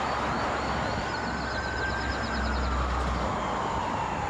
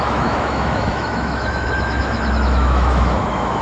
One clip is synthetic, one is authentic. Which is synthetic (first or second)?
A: second